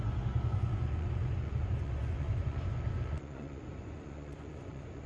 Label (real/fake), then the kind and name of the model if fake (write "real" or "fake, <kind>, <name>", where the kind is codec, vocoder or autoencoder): fake, vocoder, Vocos